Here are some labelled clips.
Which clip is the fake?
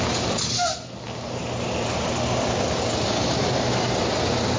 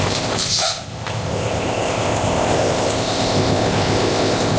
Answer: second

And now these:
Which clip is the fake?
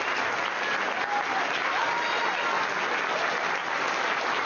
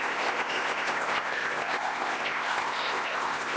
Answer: second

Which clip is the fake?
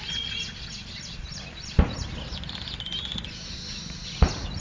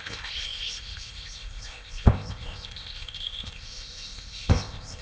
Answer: second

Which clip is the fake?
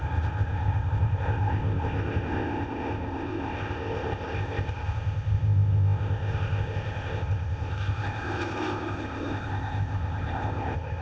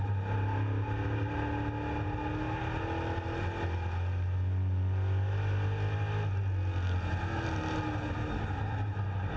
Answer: first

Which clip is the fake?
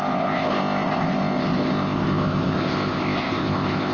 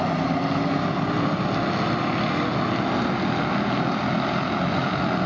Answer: first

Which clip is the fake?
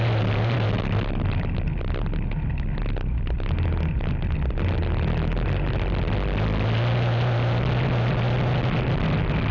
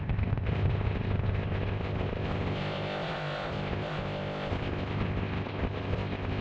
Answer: second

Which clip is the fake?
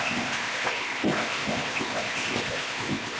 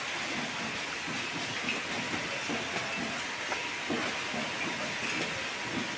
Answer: first